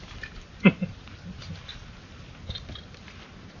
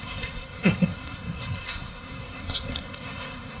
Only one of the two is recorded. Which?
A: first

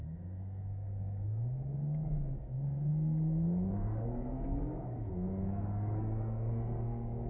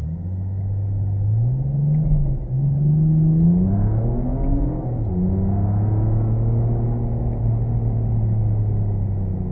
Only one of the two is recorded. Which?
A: second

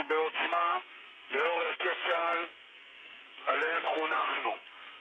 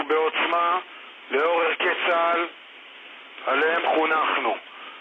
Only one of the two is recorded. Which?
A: second